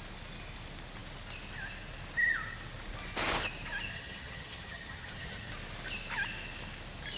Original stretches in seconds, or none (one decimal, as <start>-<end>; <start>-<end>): 0.0-3.9; 5.5-7.2